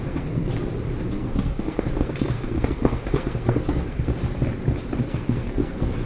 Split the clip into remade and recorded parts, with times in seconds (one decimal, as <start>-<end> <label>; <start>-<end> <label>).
0.0-0.5 remade; 0.5-1.1 recorded; 1.1-4.1 remade; 4.1-5.0 recorded; 5.0-6.1 remade